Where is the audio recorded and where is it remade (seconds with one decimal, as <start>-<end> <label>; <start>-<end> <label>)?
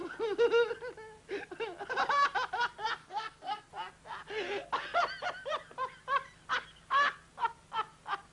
0.0-3.0 recorded; 3.0-3.7 remade; 3.7-8.3 recorded